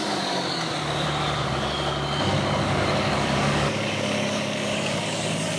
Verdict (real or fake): fake